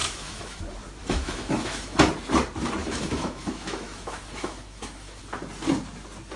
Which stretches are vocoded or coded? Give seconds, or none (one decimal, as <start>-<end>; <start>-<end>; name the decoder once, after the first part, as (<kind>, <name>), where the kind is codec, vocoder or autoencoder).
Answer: 0.0-0.6 (autoencoder, DAC-VAE); 1.0-2.0; 2.8-5.2